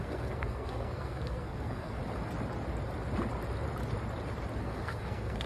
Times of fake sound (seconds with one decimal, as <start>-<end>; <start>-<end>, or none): 0.0-2.0; 4.6-5.5